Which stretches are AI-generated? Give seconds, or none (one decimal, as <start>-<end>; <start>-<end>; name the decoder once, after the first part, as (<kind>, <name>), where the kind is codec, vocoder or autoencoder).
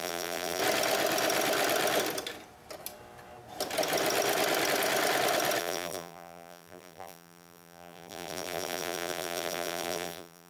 0.0-0.6 (vocoder, BigVGAN v2); 5.6-10.5